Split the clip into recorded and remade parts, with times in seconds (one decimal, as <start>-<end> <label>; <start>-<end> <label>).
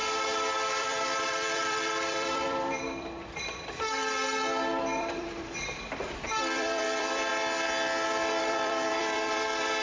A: 0.0-0.8 recorded; 0.8-4.0 remade; 4.0-5.0 recorded; 5.0-7.3 remade; 7.3-8.4 recorded; 8.4-9.8 remade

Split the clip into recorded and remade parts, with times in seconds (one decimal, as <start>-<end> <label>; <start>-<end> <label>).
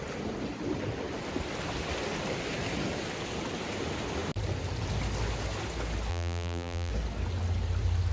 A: 0.0-6.1 recorded; 6.1-6.9 remade; 6.9-8.1 recorded